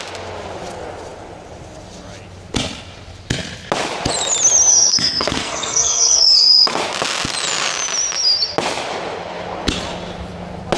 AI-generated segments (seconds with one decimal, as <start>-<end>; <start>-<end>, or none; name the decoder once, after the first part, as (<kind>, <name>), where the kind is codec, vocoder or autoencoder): 4.7-6.8 (codec, SNAC)